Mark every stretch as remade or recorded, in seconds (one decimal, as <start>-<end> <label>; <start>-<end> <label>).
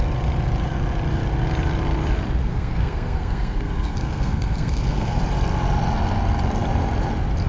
0.0-2.4 recorded; 2.4-5.2 remade; 5.2-7.5 recorded